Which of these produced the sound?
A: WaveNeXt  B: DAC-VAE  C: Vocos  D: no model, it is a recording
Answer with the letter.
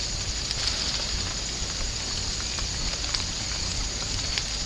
D